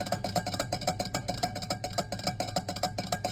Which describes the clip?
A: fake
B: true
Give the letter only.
A